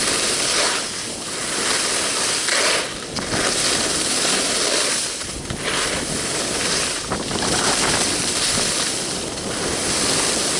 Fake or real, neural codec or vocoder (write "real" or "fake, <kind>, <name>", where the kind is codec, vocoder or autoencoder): real